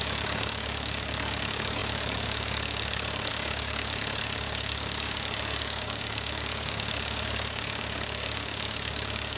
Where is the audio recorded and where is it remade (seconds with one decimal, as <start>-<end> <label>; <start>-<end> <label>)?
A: 0.0-9.4 remade